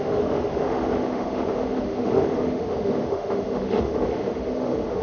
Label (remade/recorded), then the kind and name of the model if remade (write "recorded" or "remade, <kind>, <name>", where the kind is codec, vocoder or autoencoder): remade, autoencoder, DAC-VAE